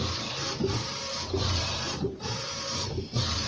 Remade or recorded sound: remade